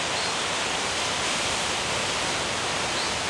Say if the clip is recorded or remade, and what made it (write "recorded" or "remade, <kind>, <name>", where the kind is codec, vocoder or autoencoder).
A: recorded